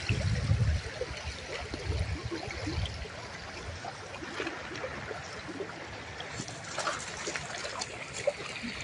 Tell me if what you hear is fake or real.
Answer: real